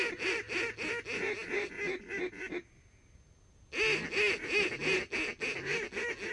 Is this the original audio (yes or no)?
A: yes